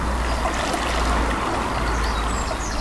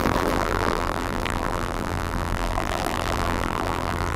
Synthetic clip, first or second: second